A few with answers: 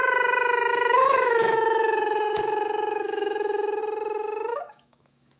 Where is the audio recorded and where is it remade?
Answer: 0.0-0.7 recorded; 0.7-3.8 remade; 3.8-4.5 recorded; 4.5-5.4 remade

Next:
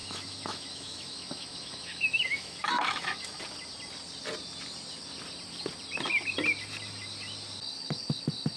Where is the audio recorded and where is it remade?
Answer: 0.0-3.4 remade; 3.4-8.6 recorded

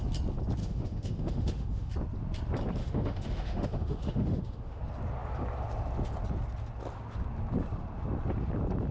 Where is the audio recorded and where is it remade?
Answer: 0.0-0.6 recorded; 0.6-1.9 remade; 1.9-2.8 recorded; 2.8-4.8 remade; 4.8-8.9 recorded

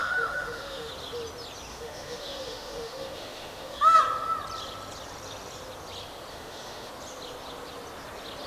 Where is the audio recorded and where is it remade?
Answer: 0.0-0.9 remade; 0.9-1.7 recorded; 1.7-4.0 remade; 4.0-6.3 recorded; 6.3-6.9 remade; 6.9-8.5 recorded

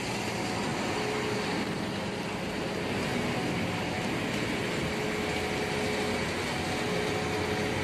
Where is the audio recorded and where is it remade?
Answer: 0.0-7.8 recorded